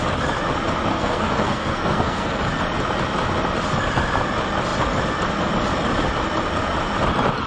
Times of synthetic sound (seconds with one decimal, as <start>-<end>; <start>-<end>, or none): 0.9-2.4

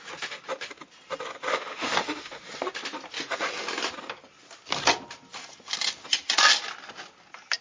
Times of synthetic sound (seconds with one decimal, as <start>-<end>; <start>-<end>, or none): 1.5-2.4

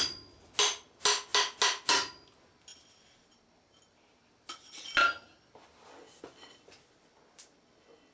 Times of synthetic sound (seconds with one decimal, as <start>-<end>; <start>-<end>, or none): none

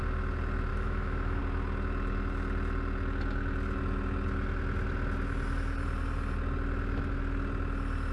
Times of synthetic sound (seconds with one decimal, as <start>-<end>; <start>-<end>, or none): 0.7-1.4

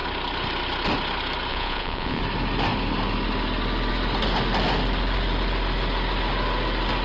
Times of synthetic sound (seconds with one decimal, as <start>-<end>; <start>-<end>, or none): 1.5-2.2

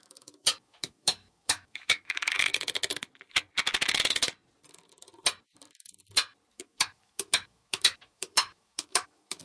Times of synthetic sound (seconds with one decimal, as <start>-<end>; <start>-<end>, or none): 0.0-2.5; 6.5-9.4

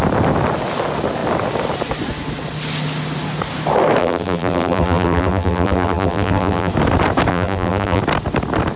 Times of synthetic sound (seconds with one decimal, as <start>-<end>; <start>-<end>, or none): 4.0-6.7; 7.3-8.0

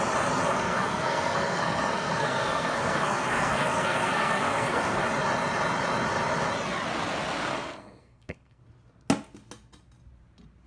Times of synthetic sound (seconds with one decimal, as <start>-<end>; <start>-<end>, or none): 0.5-5.0; 7.5-8.6